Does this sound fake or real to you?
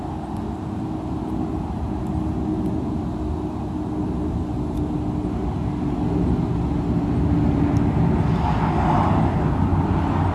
real